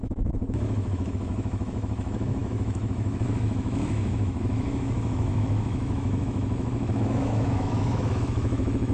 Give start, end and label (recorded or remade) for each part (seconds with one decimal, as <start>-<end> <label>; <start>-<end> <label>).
0.0-8.9 remade